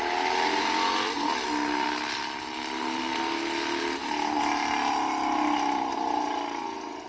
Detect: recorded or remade recorded